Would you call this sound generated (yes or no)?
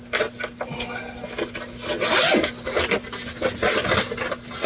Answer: no